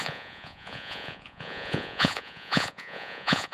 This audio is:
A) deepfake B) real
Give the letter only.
A